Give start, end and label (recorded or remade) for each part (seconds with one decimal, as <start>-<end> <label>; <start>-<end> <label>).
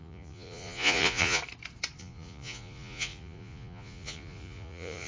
0.0-1.4 remade; 1.4-2.0 recorded; 2.0-5.1 remade